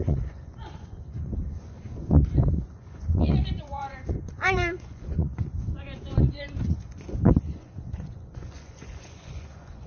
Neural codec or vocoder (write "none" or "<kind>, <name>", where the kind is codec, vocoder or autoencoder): vocoder, Vocos